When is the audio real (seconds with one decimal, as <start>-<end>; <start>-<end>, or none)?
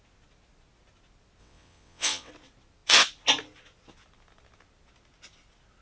0.0-1.4; 2.3-5.8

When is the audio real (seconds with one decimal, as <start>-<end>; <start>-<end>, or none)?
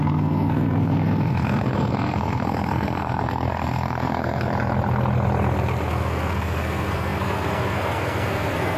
4.5-5.9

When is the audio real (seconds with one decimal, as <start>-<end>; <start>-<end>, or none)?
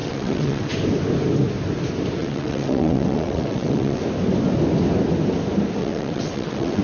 0.7-2.2; 4.0-5.8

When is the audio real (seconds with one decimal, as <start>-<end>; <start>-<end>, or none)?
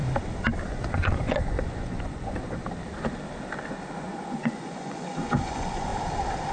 0.0-0.7; 2.6-4.0; 5.9-6.5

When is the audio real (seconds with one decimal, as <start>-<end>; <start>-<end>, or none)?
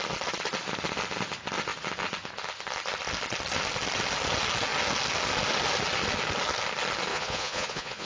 0.0-7.1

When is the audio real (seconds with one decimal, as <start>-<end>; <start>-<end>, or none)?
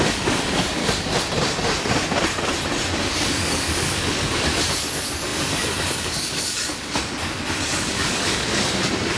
0.8-2.9